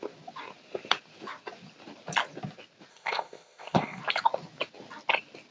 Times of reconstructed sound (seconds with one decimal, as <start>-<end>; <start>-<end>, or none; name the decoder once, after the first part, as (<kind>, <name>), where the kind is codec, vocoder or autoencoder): 2.9-4.0 (codec, ZipCodec)